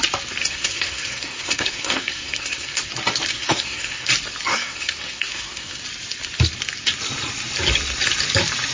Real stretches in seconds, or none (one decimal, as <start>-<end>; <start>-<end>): 0.0-0.4; 2.9-3.3; 4.1-4.5; 5.8-8.7